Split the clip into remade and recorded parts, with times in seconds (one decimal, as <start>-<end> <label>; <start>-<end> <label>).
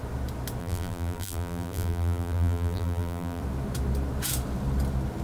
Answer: 0.0-0.6 recorded; 0.6-3.4 remade; 3.4-5.2 recorded